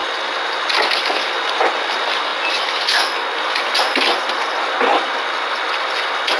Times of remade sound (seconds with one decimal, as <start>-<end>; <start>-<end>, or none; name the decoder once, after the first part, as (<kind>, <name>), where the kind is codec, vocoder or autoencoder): none